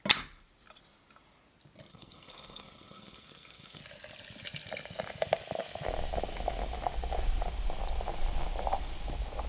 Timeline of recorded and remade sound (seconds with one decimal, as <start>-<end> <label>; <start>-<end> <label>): 0.0-1.9 recorded; 1.9-3.8 remade; 3.8-9.5 recorded